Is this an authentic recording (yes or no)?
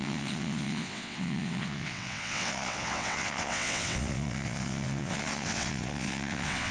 no